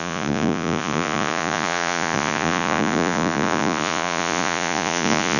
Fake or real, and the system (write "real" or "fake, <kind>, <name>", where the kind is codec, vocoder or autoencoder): fake, vocoder, Vocos